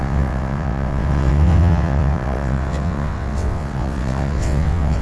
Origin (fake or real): fake